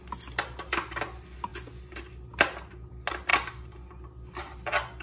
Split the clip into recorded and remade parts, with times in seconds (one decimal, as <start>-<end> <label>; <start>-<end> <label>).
0.0-5.0 recorded

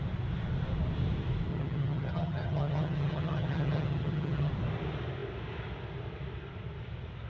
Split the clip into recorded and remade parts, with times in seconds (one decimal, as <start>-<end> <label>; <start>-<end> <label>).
0.0-1.5 recorded; 1.5-4.5 remade; 4.5-7.3 recorded

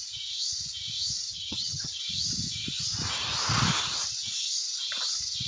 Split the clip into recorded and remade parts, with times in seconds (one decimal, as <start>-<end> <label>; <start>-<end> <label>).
0.0-1.3 recorded; 1.3-2.0 remade; 2.0-5.5 recorded

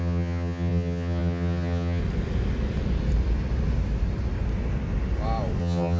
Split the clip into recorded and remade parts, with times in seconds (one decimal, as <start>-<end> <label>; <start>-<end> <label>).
0.0-2.0 remade; 2.0-5.6 recorded; 5.6-6.0 remade

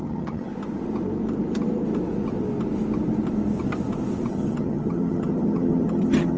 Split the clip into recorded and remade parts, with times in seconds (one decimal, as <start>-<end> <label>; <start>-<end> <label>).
0.0-0.5 remade; 0.5-4.3 recorded; 4.3-6.4 remade